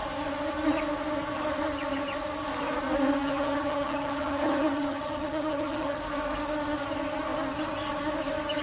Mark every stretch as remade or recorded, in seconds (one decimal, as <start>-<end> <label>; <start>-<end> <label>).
0.0-3.2 recorded; 3.2-6.0 remade; 6.0-8.6 recorded